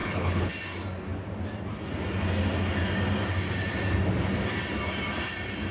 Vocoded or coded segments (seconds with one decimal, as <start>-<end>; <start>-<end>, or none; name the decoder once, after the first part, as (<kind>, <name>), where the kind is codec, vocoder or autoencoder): 0.0-0.5 (codec, HILCodec)